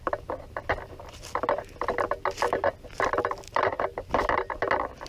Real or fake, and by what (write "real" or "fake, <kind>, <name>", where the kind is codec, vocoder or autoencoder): real